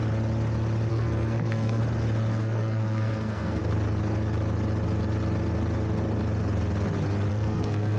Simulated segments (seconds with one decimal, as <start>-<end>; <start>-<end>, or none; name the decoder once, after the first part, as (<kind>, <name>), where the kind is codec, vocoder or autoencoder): 0.9-1.8 (codec, SNAC); 2.3-3.6; 7.3-8.0